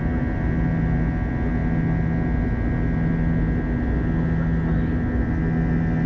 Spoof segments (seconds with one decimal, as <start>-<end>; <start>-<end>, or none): none